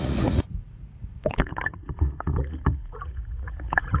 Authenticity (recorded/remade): remade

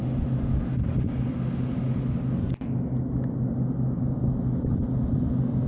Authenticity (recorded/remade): recorded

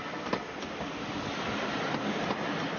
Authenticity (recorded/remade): recorded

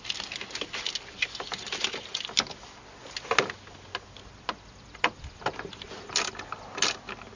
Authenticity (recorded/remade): recorded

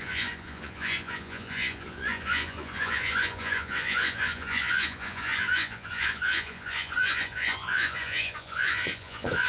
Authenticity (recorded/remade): remade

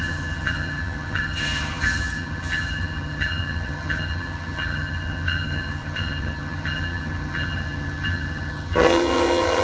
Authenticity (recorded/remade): remade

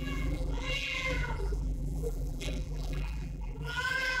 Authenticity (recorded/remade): remade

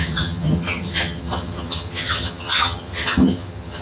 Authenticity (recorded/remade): remade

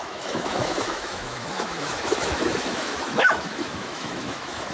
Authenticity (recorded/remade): remade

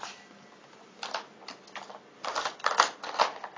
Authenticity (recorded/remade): recorded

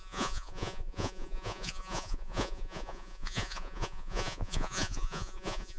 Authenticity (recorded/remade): remade